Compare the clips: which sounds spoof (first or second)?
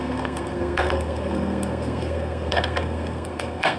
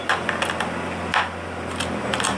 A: first